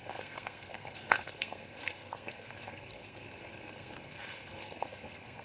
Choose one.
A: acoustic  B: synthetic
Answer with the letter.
B